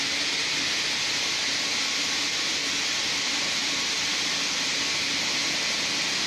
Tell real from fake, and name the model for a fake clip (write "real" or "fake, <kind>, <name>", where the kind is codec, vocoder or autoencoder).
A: real